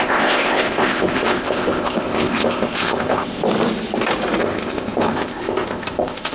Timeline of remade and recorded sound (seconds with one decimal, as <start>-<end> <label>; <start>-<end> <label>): 0.0-3.4 remade; 3.4-4.4 recorded; 4.4-6.3 remade